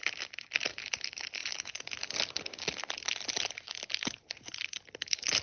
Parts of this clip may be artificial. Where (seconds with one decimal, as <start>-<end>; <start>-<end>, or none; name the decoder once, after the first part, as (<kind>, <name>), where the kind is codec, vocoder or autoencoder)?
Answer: none